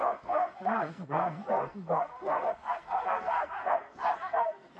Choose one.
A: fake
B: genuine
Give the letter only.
A